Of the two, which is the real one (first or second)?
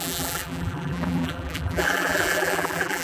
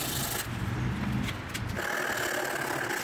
second